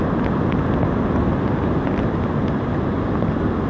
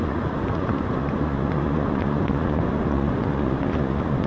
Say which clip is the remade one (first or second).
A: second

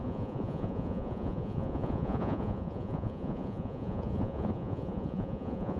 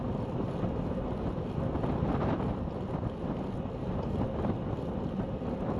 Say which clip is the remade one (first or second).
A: first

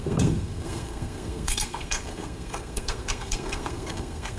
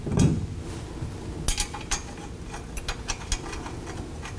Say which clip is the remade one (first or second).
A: first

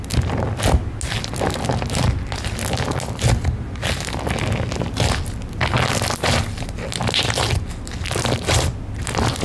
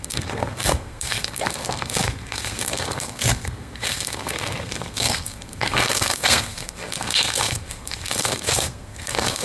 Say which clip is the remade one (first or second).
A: second